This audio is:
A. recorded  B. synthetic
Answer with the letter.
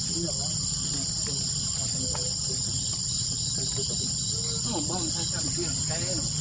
A